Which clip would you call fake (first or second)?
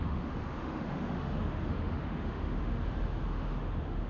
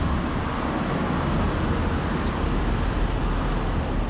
first